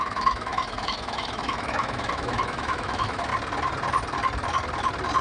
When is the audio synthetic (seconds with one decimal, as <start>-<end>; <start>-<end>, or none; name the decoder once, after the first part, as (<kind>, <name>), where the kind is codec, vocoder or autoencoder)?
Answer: 0.0-3.3 (autoencoder, DAC-VAE)